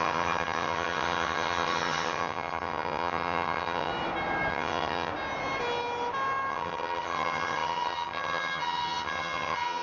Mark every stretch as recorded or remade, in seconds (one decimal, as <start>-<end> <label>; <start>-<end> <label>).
0.0-3.9 remade; 3.9-4.5 recorded; 4.5-5.1 remade; 5.1-6.5 recorded; 6.5-9.8 remade